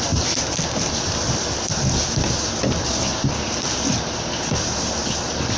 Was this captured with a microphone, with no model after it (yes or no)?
yes